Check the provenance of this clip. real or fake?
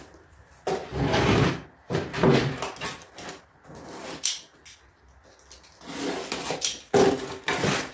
real